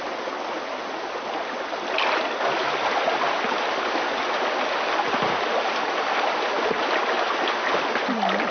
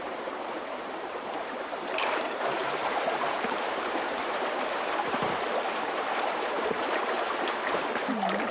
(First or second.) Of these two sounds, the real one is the first